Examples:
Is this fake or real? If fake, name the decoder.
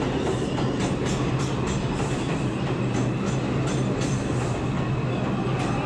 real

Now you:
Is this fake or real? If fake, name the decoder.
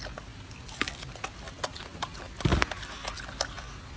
real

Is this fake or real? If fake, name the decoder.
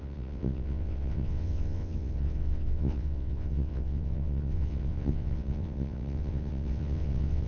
fake, vocoder, WaveNeXt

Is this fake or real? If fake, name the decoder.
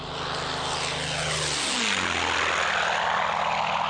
real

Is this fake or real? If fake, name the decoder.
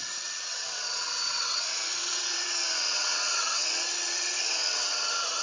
fake, vocoder, WaveNeXt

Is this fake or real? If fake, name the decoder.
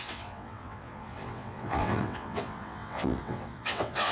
fake, vocoder, WaveNeXt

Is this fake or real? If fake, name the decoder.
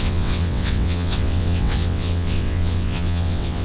fake, vocoder, WaveNeXt